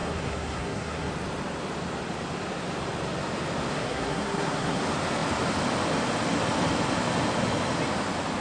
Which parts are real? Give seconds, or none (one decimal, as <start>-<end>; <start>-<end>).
1.1-3.7; 4.8-8.4